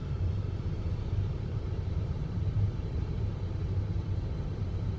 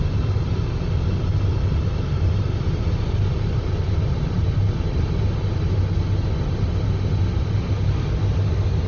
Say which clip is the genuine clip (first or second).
second